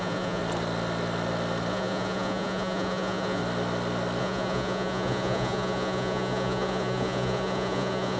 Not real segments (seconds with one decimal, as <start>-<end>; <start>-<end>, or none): 0.0-0.4; 1.7-3.4; 4.2-8.2